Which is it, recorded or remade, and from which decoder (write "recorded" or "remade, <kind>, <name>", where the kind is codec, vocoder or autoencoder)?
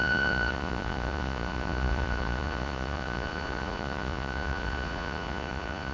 remade, vocoder, Vocos